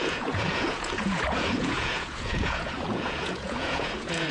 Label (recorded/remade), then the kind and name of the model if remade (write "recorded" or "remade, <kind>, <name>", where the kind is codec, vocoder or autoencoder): remade, vocoder, Vocos